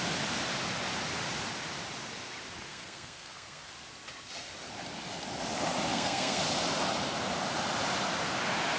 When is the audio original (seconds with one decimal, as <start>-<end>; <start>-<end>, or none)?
0.0-2.7; 3.7-5.9; 6.4-8.8